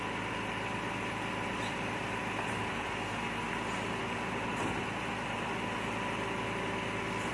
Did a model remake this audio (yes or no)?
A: no